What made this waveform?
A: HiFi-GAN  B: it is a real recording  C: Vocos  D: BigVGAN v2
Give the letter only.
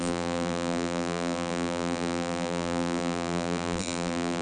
D